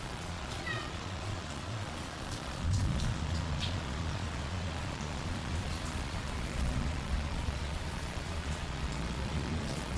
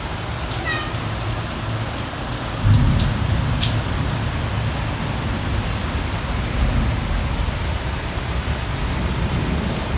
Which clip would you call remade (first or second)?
first